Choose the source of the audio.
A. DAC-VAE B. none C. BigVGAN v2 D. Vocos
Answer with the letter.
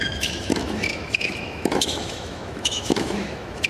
A